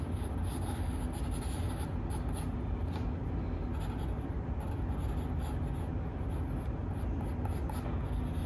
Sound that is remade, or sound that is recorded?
recorded